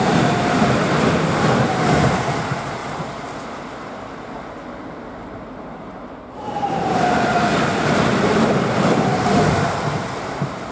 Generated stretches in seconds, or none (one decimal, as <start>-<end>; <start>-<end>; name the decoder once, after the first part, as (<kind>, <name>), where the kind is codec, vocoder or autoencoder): 0.0-2.8 (vocoder, BigVGAN v2); 5.2-10.7